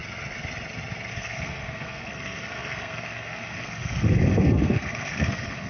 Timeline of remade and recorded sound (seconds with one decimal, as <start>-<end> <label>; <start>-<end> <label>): 0.0-1.1 recorded; 1.1-5.7 remade